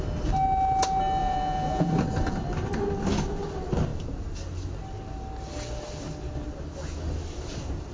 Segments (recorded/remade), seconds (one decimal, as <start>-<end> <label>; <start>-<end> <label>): 0.0-1.2 recorded; 1.2-1.9 remade; 1.9-7.9 recorded